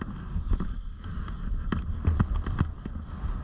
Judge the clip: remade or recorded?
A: recorded